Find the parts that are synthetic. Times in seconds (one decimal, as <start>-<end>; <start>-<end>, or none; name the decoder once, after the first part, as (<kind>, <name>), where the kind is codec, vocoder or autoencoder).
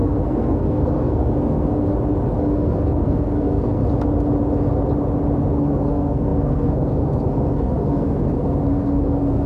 0.0-1.9 (codec, SNAC); 2.4-3.8; 5.5-9.5